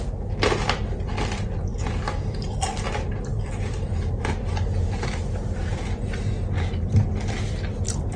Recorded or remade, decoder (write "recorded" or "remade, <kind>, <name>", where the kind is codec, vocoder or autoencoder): recorded